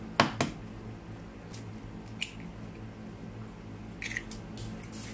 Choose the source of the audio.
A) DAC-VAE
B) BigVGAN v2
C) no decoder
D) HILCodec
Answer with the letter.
C